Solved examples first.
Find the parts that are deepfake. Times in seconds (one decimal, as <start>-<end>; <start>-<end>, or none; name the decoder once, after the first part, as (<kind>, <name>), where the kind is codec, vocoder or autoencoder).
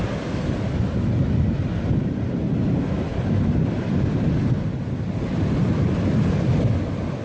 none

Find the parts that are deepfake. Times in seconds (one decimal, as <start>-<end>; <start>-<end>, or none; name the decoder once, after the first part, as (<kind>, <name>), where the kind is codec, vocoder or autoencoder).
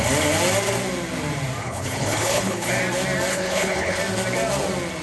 1.6-2.7 (codec, HILCodec); 3.3-4.0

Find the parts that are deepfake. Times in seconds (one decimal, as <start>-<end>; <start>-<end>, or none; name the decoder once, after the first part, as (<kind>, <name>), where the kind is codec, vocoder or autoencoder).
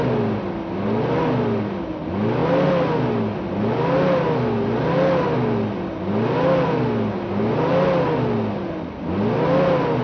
none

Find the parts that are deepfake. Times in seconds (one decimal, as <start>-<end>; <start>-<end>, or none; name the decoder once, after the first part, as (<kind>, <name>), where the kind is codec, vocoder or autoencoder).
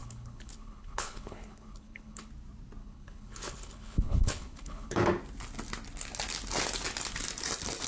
0.0-2.3 (codec, HILCodec); 2.8-5.1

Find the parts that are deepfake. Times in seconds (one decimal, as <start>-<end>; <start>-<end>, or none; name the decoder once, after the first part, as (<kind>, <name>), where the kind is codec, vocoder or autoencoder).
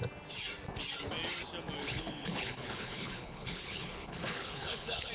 1.8-5.1 (codec, HILCodec)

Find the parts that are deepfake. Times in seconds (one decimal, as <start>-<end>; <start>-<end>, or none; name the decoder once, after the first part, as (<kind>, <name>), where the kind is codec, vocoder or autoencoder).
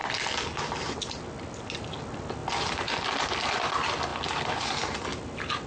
none